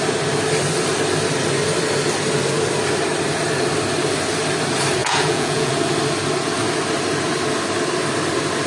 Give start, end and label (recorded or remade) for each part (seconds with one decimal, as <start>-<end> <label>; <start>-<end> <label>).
0.0-5.0 recorded; 5.0-5.7 remade; 5.7-8.7 recorded